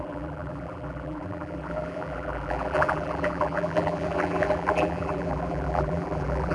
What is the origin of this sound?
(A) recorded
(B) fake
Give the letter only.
B